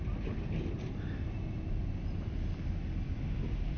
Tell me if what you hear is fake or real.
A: real